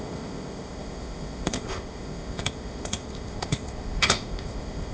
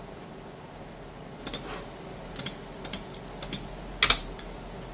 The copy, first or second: first